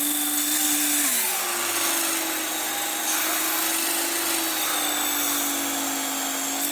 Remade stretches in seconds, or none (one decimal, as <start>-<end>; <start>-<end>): none